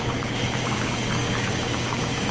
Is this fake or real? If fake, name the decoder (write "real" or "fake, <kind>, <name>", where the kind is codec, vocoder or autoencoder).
fake, codec, DAC